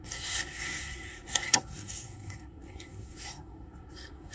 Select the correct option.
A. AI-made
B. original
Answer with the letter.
A